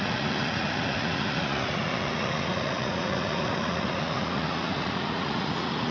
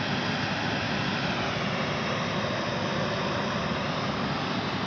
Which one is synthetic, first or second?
first